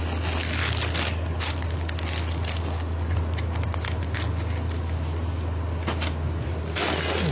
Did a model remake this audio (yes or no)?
no